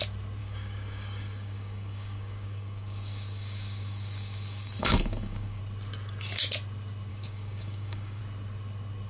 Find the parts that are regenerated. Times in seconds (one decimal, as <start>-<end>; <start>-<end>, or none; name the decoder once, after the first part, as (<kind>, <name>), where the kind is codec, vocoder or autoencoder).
0.4-5.6 (codec, DAC); 7.1-8.2